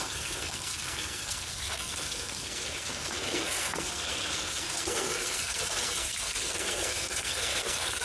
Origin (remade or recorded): remade